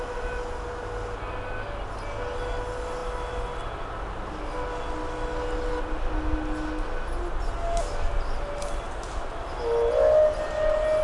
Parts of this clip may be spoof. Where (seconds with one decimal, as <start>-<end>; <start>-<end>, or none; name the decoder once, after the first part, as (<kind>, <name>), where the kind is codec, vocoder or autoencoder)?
none